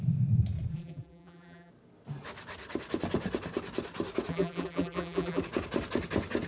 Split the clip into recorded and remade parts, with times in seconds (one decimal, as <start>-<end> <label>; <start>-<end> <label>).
0.0-0.7 recorded; 0.7-1.7 remade; 1.7-4.3 recorded; 4.3-5.4 remade; 5.4-6.5 recorded